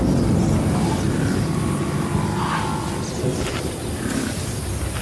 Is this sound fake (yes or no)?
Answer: no